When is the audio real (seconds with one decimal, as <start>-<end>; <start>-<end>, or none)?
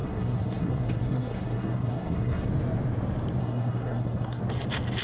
2.5-3.4; 4.4-5.0